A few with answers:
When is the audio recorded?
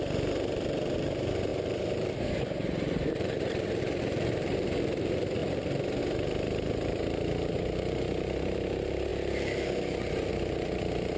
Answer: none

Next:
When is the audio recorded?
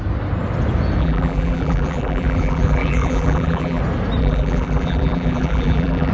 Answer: 0.0-1.0; 3.8-4.2